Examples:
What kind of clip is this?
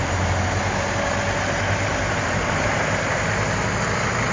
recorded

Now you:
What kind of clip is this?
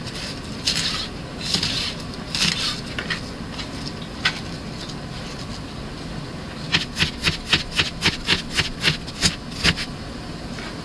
recorded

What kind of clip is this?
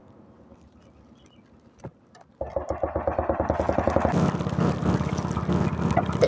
recorded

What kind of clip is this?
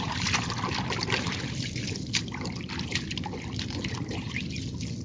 remade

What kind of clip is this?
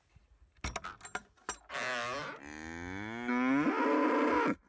recorded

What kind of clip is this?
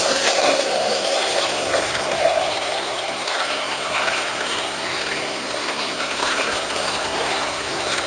remade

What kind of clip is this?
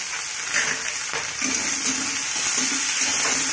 recorded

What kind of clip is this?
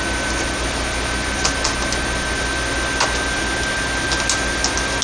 recorded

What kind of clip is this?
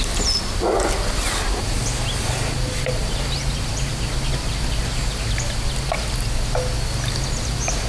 recorded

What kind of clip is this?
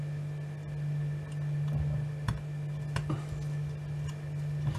recorded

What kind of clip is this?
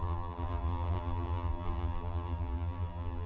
remade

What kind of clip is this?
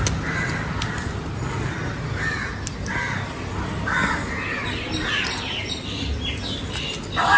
recorded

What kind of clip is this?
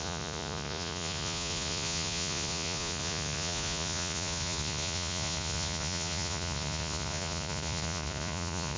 remade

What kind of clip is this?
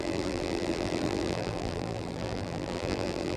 remade